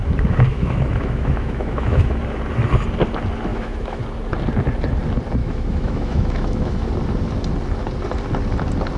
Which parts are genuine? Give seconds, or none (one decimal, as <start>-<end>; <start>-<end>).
0.0-0.5; 2.2-3.5; 4.0-5.4; 6.9-9.0